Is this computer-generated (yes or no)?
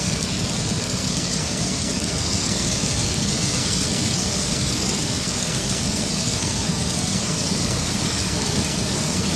yes